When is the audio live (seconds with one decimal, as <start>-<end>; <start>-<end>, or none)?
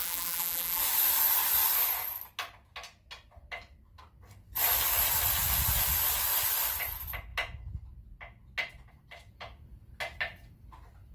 0.8-11.1